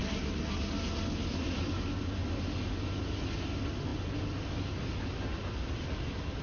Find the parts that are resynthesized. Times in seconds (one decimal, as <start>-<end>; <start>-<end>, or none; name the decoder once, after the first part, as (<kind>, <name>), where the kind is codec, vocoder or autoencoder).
none